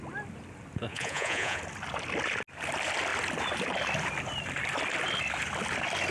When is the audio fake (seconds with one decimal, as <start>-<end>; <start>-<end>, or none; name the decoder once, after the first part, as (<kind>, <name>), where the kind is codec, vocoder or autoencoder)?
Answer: 0.9-1.6 (vocoder, Vocos)